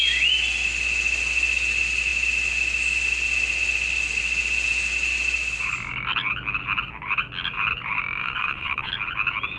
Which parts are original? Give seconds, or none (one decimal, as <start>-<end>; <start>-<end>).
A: 0.0-8.2; 8.9-9.6